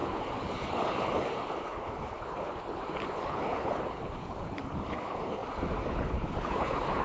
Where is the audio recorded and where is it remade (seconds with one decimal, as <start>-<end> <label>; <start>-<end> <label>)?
0.0-5.4 remade; 5.4-5.9 recorded; 5.9-7.0 remade